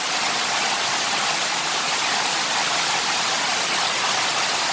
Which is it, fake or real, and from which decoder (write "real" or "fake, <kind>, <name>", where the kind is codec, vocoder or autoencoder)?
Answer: real